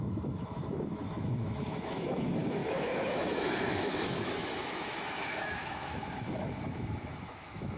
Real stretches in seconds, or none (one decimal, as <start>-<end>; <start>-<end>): none